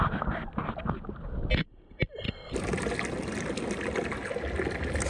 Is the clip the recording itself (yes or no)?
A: yes